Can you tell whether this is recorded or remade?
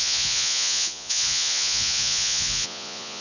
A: remade